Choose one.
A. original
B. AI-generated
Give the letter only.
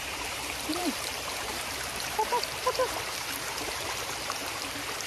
B